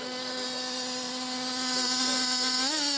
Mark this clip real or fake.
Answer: real